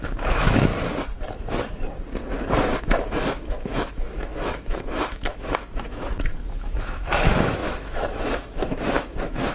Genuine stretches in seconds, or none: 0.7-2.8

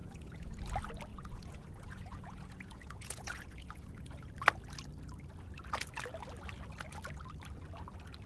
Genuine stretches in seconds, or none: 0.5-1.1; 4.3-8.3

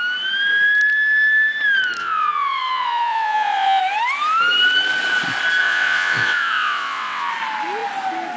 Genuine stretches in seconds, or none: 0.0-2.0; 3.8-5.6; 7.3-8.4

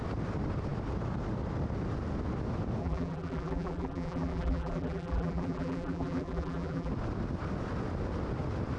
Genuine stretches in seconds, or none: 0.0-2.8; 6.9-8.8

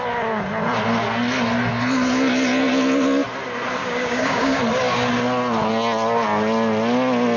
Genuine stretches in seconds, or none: 0.0-3.8; 4.6-7.4

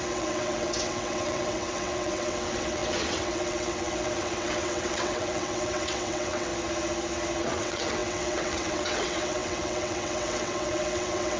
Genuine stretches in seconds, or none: 6.5-7.4

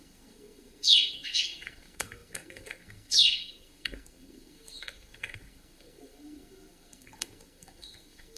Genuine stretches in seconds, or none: none